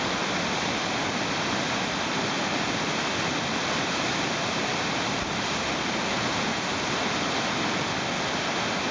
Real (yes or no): yes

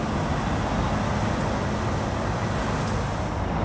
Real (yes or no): yes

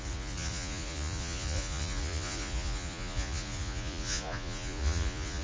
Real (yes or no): no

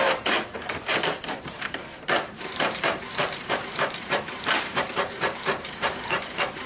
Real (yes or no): no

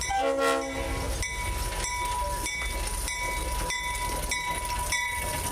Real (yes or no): yes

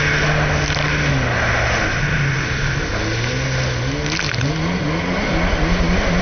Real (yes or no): yes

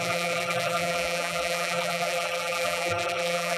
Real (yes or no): no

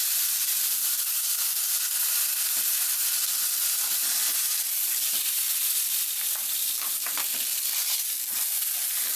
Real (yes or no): yes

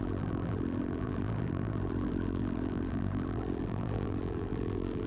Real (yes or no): no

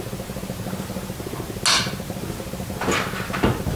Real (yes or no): yes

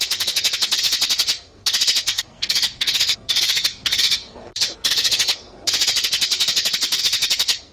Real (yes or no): no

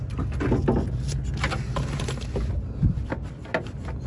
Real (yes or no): yes